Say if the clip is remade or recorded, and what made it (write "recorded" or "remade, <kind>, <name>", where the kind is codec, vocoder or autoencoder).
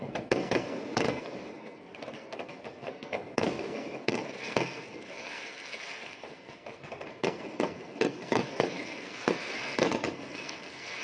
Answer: remade, codec, SNAC